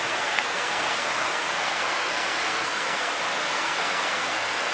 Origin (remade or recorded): remade